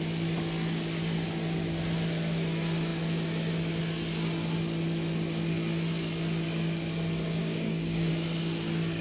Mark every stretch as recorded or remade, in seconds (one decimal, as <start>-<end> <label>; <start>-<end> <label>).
0.0-7.4 recorded; 7.4-8.1 remade; 8.1-9.0 recorded